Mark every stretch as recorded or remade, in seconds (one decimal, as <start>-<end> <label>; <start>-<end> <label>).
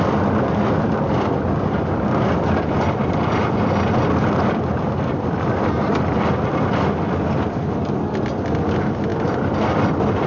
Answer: 0.0-4.0 recorded; 4.0-5.9 remade; 5.9-10.3 recorded